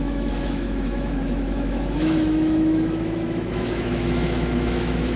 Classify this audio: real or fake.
fake